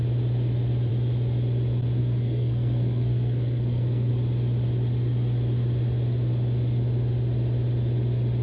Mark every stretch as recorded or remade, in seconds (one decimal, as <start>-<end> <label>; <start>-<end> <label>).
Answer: 0.0-2.0 recorded; 2.0-4.1 remade; 4.1-8.4 recorded